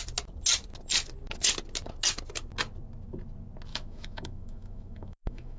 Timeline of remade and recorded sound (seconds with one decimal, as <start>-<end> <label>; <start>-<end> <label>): 0.0-3.7 recorded; 3.7-5.6 remade